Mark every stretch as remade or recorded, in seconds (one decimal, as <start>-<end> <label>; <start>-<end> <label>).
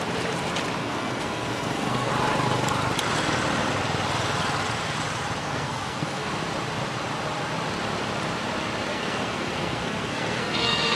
0.0-0.8 recorded; 0.8-2.1 remade; 2.1-5.4 recorded; 5.4-6.3 remade; 6.3-8.9 recorded; 8.9-11.0 remade